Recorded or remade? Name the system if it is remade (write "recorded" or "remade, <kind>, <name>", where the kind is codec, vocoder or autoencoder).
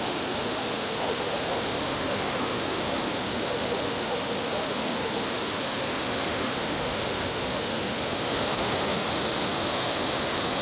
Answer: remade, autoencoder, DAC-VAE